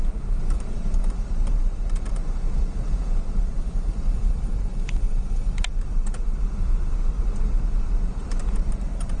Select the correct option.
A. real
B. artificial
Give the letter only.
B